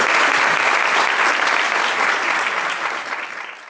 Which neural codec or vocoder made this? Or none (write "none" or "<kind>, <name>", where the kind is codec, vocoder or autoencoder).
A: none